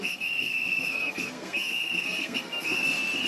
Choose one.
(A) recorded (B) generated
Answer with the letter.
B